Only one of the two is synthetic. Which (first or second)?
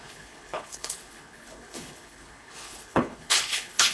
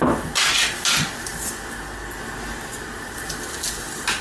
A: first